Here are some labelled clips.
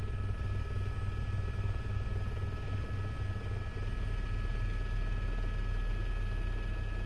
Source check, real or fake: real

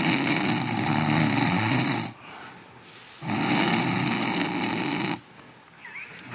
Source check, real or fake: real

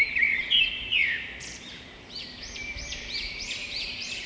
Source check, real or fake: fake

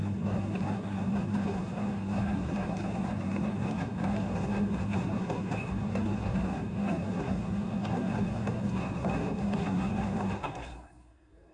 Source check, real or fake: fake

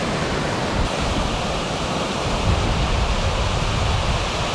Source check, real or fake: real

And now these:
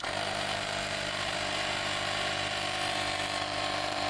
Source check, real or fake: fake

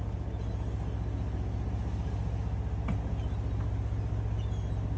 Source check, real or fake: real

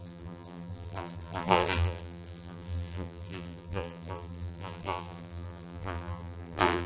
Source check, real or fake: fake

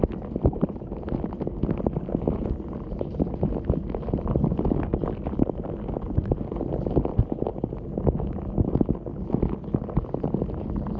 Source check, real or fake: real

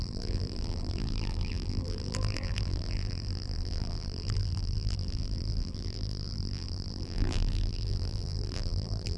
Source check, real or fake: fake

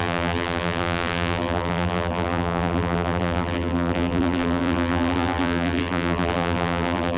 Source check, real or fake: fake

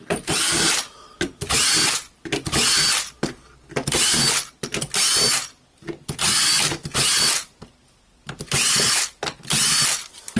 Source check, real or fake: real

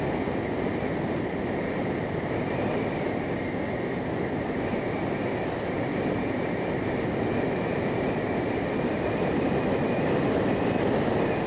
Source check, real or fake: real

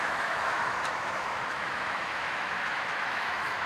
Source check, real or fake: fake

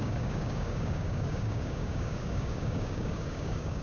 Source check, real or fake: fake